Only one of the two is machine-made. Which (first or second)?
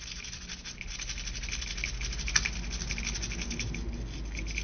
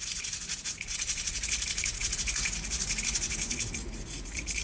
second